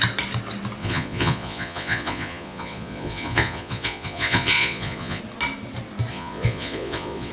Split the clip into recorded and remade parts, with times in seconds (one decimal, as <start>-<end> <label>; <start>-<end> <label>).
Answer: 0.0-0.8 recorded; 0.8-5.2 remade; 5.2-6.1 recorded; 6.1-7.3 remade

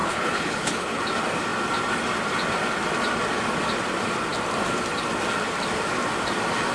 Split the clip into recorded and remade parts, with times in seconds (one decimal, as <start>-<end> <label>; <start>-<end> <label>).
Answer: 0.0-1.0 remade; 1.0-6.7 recorded

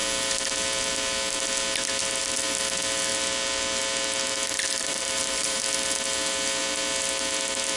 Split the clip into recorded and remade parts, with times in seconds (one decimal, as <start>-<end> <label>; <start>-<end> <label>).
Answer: 0.0-4.8 recorded; 4.8-5.6 remade; 5.6-7.8 recorded

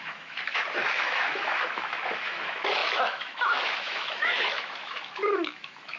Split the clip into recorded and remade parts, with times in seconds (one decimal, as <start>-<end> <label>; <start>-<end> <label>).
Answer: 0.0-6.0 remade